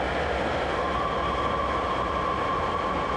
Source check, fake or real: real